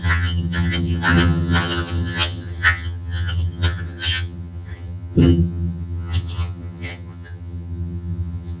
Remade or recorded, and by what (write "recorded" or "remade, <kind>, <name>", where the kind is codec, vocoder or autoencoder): remade, vocoder, HiFi-GAN